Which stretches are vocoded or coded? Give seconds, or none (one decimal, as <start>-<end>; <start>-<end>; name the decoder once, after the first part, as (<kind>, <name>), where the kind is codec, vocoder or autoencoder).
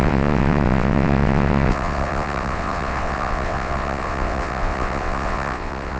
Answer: 0.0-6.0 (vocoder, WaveNeXt)